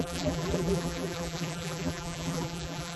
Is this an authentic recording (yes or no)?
no